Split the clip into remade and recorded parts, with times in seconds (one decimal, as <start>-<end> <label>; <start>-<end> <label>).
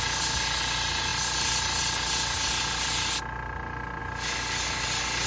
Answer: 0.0-5.3 recorded